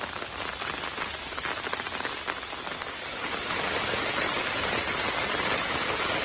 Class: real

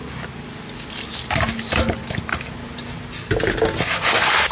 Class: real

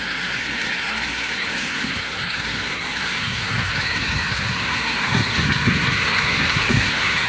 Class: fake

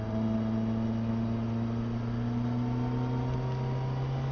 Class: real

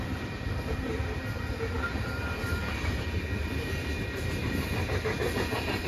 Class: fake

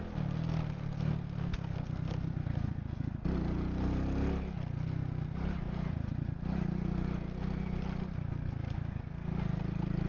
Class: real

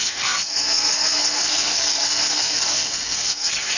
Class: fake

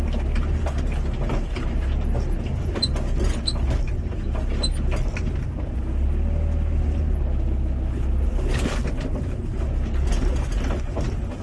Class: real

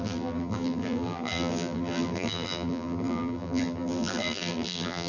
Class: fake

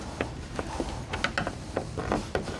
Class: real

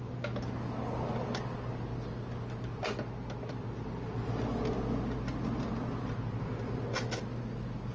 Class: real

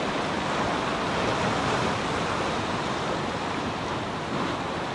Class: real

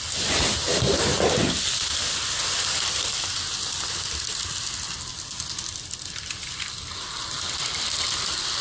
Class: real